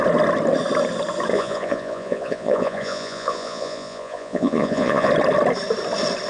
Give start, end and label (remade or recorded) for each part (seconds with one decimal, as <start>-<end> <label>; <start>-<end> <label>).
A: 0.0-1.3 recorded; 1.3-5.1 remade; 5.1-6.3 recorded